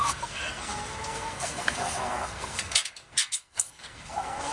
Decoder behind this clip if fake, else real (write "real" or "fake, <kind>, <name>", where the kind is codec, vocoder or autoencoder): fake, codec, SNAC